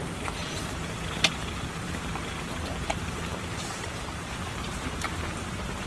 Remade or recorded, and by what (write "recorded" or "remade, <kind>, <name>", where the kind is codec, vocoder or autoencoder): remade, vocoder, BigVGAN v2